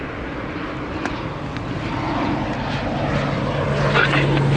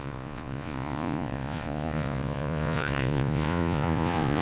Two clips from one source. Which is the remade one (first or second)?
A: second